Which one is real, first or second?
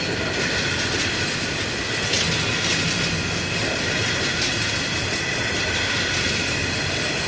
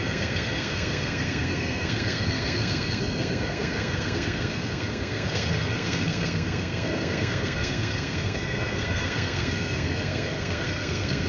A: first